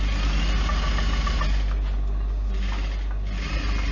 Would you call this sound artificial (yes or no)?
no